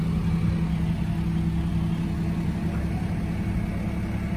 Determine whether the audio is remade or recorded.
recorded